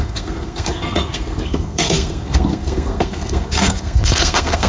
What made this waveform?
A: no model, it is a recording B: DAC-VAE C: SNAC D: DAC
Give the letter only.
C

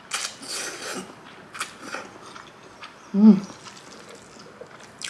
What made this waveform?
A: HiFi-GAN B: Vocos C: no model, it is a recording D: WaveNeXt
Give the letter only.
C